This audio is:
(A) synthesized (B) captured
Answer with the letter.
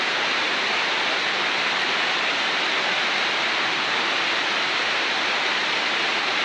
B